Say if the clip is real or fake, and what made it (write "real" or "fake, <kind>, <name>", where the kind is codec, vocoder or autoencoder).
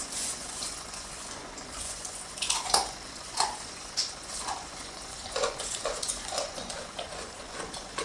fake, vocoder, Vocos